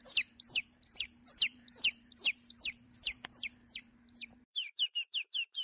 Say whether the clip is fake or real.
fake